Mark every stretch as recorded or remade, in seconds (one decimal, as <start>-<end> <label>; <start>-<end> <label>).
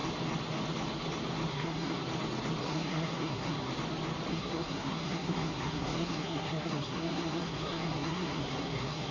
0.0-1.5 recorded; 1.5-2.0 remade; 2.0-2.6 recorded; 2.6-3.7 remade; 3.7-4.3 recorded; 4.3-9.1 remade